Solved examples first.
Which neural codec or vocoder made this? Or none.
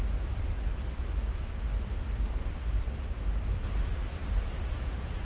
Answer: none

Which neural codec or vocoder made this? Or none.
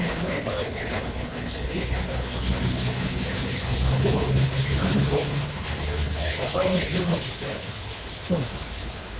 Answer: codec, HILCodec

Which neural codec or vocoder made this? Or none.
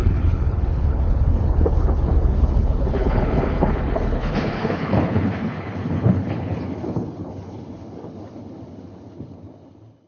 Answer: codec, HILCodec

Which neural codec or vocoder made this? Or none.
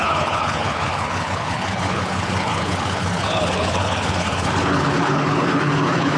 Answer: codec, HILCodec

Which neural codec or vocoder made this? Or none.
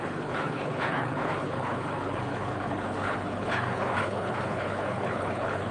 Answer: codec, HILCodec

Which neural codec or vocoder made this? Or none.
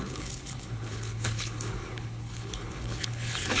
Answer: codec, HILCodec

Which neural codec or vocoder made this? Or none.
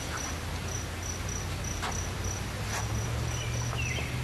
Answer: none